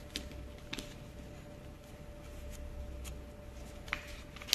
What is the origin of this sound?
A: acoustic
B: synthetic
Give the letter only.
A